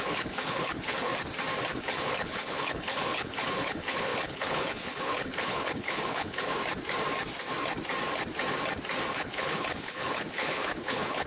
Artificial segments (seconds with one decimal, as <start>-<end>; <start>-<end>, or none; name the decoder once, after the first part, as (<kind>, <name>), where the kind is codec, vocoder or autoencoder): 0.0-1.1 (codec, HILCodec); 1.7-6.5; 9.1-11.3